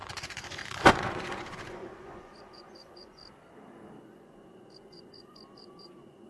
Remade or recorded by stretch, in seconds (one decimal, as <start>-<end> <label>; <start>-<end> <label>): 0.0-3.2 remade; 3.2-4.0 recorded; 4.0-6.3 remade